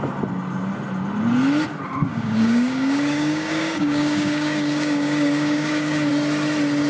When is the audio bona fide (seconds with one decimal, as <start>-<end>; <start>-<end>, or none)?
0.0-2.1; 6.1-6.9